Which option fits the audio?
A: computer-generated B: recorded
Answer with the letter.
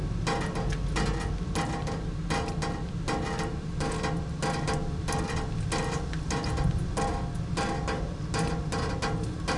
B